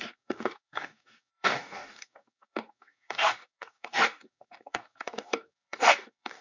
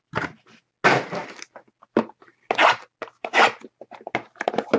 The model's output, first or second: first